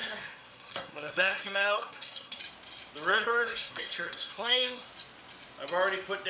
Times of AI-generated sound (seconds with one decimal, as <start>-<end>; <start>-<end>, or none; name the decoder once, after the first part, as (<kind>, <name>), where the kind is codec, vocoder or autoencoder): 0.0-2.4 (codec, SNAC); 3.1-4.9